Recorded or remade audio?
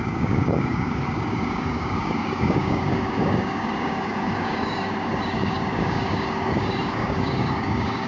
remade